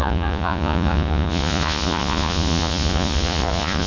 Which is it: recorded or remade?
remade